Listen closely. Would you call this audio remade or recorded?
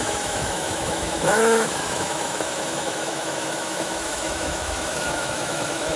remade